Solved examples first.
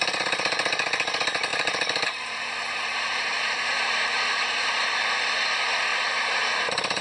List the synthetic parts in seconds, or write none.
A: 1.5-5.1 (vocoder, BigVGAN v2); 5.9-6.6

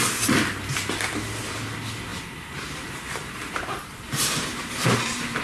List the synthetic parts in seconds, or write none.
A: 2.1-5.4 (vocoder, BigVGAN v2)

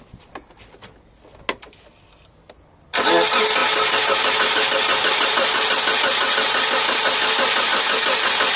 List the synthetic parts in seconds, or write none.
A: none

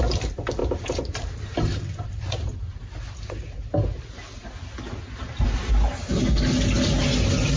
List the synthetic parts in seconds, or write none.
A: 0.6-2.8 (vocoder, BigVGAN v2)

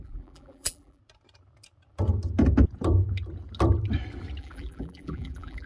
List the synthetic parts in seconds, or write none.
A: 0.0-1.0 (vocoder, BigVGAN v2); 4.4-5.7